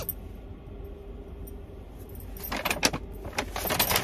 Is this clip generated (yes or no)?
no